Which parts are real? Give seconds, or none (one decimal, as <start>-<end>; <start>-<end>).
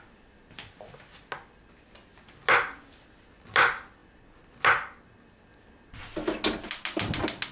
0.0-7.5